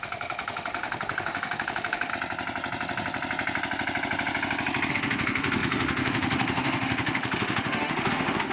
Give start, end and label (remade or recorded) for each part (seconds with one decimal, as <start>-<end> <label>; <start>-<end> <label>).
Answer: 0.0-2.1 remade; 2.1-4.9 recorded; 4.9-8.5 remade